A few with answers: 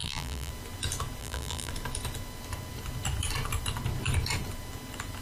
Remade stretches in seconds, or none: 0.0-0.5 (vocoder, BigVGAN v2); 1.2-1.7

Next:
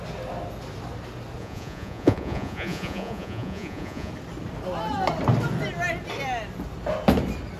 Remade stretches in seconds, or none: 1.4-4.1 (vocoder, Vocos)